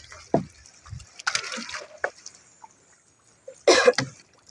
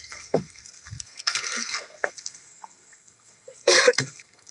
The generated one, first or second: second